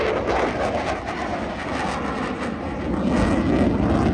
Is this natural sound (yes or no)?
yes